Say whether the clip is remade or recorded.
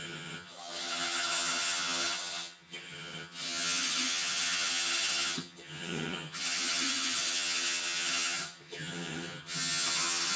remade